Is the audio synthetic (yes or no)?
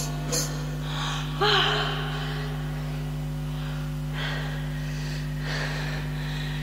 no